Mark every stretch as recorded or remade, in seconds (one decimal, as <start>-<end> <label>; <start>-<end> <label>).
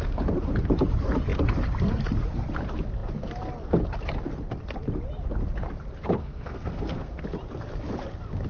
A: 0.0-6.2 recorded; 6.2-7.2 remade; 7.2-8.5 recorded